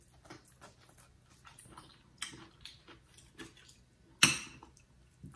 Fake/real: real